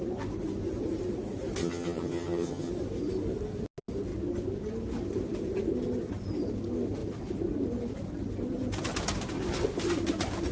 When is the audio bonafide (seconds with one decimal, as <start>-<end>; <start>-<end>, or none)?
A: 0.0-1.6; 2.7-10.5